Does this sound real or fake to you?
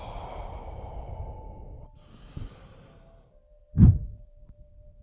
real